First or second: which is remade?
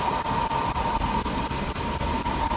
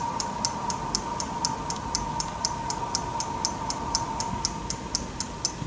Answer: first